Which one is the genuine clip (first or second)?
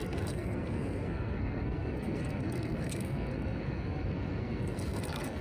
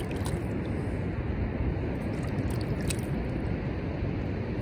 second